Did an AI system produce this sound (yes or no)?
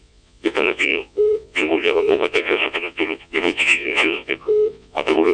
yes